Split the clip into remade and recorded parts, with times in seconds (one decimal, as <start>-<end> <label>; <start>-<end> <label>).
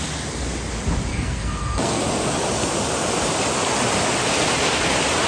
0.0-1.1 recorded; 1.1-2.0 remade; 2.0-5.3 recorded